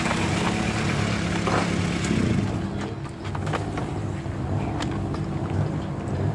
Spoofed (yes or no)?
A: no